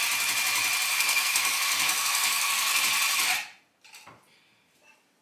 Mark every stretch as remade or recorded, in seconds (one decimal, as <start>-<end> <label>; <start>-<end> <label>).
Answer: 0.0-0.9 recorded; 0.9-2.8 remade; 2.8-5.2 recorded